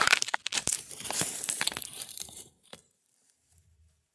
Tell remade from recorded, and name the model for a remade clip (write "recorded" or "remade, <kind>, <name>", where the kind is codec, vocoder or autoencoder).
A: remade, vocoder, BigVGAN v2